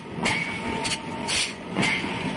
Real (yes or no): no